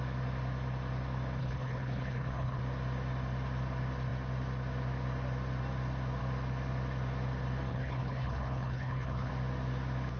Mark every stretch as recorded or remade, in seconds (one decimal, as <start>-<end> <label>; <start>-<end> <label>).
0.0-1.4 recorded; 1.4-2.6 remade; 2.6-7.7 recorded; 7.7-9.3 remade; 9.3-10.2 recorded